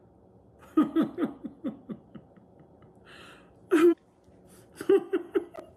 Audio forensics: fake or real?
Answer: real